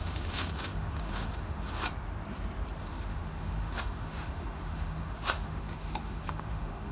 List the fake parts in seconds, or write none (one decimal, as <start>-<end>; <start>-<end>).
0.0-1.8; 2.8-6.9